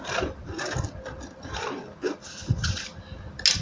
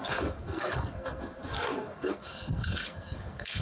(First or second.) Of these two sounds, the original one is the first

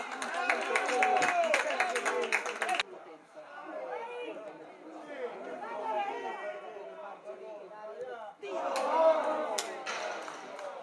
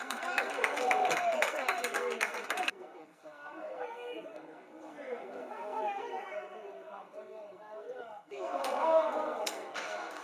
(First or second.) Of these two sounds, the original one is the first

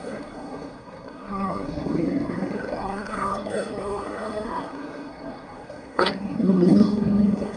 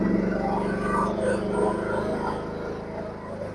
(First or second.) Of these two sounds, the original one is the second